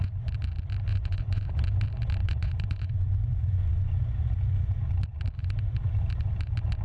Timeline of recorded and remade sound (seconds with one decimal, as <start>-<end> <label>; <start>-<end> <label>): 0.0-0.9 recorded; 0.9-1.6 remade; 1.6-2.2 recorded; 2.2-3.9 remade; 3.9-6.8 recorded